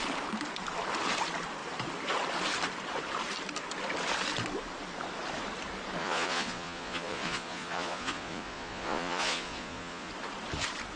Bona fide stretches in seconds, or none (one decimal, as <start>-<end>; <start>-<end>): 0.0-6.0; 10.1-11.0